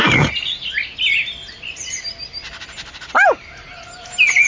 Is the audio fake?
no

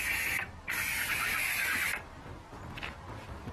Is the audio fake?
no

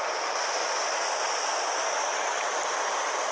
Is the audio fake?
no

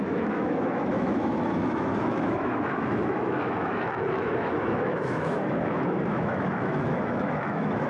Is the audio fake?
yes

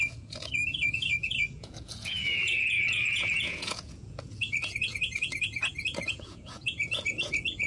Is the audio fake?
yes